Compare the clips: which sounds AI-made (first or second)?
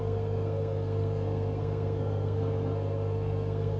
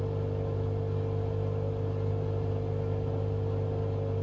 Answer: first